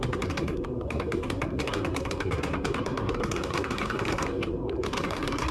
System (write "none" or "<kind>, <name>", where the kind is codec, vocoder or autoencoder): codec, SNAC